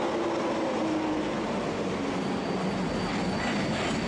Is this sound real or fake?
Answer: real